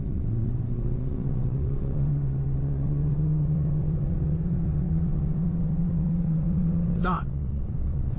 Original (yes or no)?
no